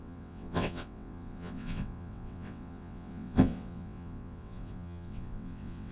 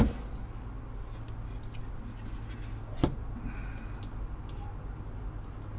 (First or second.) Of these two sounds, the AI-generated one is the first